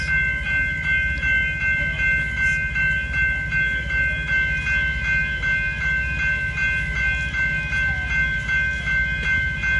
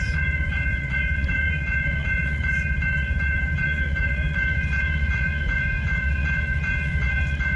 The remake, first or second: second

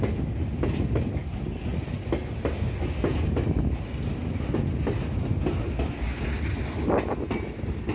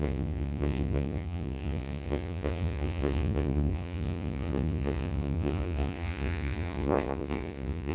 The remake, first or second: second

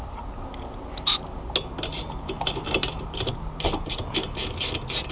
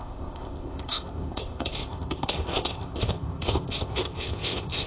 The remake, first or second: second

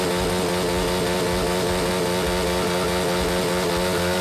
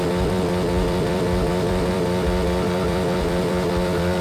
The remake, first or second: second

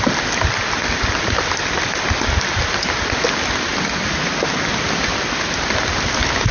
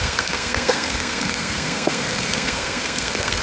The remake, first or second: second